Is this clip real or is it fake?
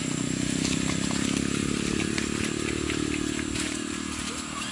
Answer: real